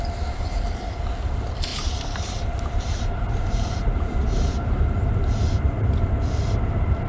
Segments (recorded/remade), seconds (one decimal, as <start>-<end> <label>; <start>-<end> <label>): 0.0-1.7 recorded; 1.7-4.8 remade; 4.8-7.1 recorded